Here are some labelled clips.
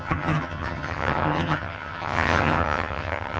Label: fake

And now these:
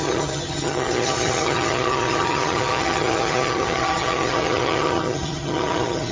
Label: fake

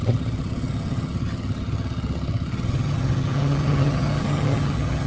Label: fake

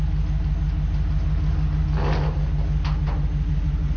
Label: real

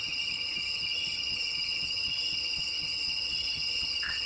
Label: fake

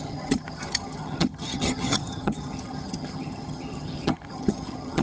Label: fake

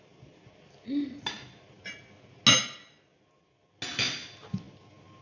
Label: real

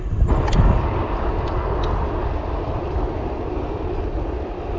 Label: real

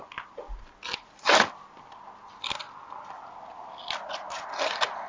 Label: real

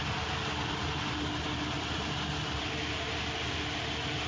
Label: real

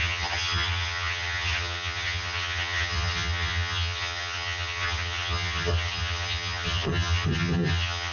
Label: fake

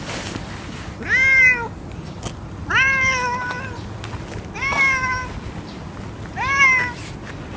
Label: real